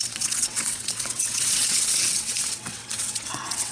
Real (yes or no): no